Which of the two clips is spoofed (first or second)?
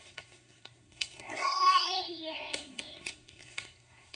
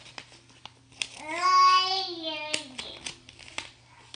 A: first